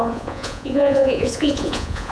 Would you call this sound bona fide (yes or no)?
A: no